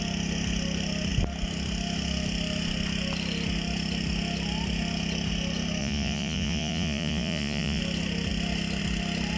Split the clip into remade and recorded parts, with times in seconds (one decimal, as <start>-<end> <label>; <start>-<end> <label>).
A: 0.0-5.8 recorded; 5.8-7.8 remade; 7.8-9.4 recorded